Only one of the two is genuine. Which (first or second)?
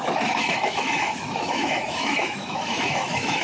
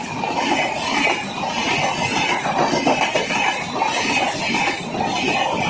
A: second